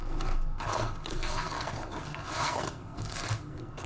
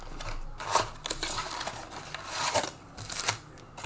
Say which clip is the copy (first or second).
first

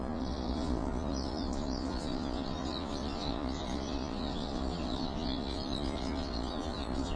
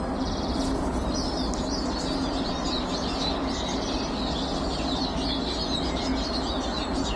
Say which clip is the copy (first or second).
first